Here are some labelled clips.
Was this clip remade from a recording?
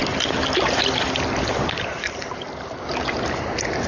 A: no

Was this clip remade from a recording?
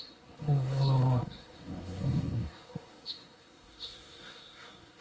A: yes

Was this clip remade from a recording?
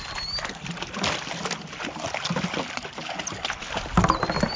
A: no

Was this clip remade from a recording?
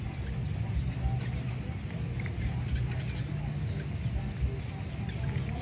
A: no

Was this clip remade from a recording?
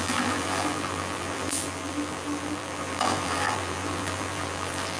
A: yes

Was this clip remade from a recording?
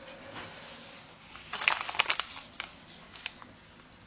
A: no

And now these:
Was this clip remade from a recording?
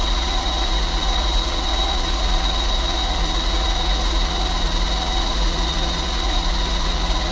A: yes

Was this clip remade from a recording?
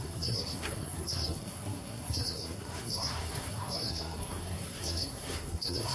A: yes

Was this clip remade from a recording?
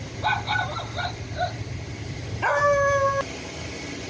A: no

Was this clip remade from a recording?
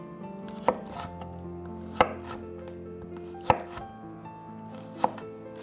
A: no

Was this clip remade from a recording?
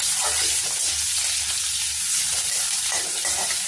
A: no